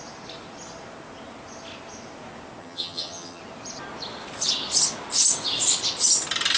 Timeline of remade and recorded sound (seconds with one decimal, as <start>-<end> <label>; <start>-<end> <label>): 0.0-2.6 recorded; 2.6-3.4 remade; 3.4-6.6 recorded